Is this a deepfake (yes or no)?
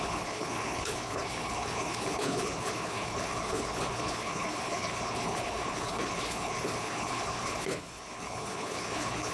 yes